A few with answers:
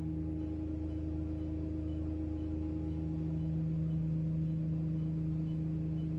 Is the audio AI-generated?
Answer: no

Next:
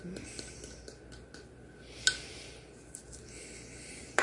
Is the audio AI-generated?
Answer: no